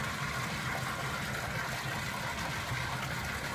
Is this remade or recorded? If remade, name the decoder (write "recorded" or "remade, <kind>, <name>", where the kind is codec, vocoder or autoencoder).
recorded